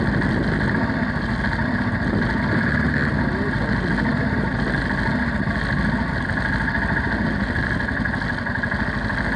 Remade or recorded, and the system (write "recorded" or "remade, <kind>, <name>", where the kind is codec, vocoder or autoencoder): recorded